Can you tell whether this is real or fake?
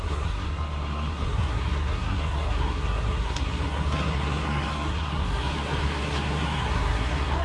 fake